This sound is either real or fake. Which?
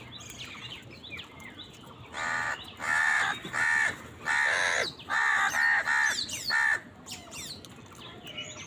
real